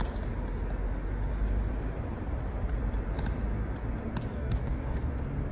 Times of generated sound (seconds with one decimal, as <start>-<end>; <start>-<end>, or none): 4.3-5.1